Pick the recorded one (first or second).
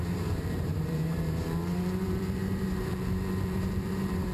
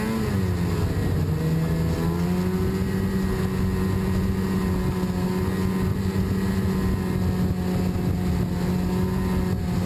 second